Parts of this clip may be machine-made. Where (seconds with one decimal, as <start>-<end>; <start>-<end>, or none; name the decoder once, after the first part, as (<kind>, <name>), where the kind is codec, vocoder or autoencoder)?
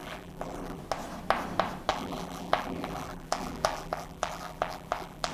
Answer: 0.0-0.8 (vocoder, BigVGAN v2); 1.9-5.3